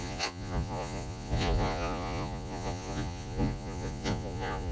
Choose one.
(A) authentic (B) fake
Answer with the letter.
B